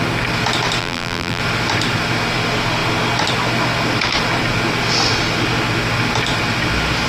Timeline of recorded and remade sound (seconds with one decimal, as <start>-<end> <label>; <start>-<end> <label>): 0.0-0.8 recorded; 0.8-1.4 remade; 1.4-7.1 recorded